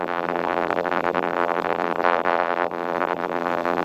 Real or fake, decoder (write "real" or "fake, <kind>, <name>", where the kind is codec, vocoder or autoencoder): fake, vocoder, BigVGAN v2